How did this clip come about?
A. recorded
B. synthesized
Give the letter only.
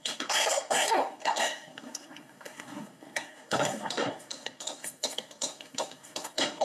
B